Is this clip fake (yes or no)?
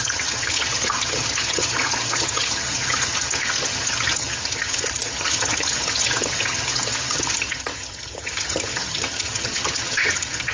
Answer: yes